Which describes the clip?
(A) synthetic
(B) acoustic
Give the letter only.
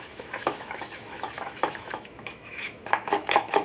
A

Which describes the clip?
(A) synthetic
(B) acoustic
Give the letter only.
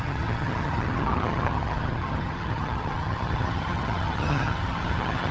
A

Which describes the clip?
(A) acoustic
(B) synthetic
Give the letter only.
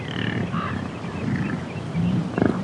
A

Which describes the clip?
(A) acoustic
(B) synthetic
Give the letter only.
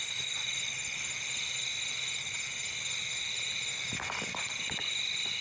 A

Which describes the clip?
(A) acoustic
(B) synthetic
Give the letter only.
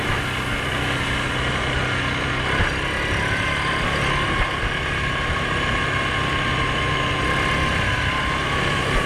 A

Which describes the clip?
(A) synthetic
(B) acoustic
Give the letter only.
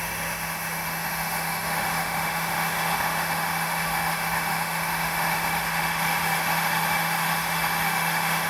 A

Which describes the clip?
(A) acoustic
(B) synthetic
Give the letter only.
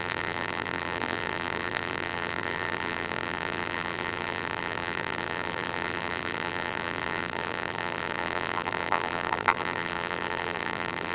B